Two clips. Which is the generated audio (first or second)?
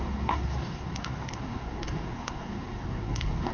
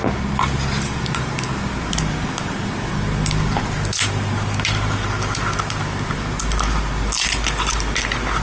first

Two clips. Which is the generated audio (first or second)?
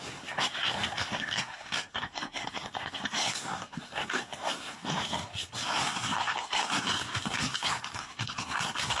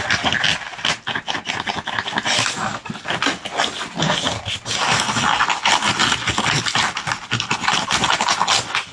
first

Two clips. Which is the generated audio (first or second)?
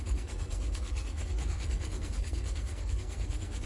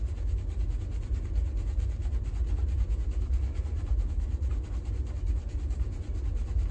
first